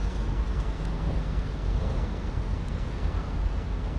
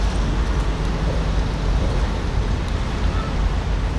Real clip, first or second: second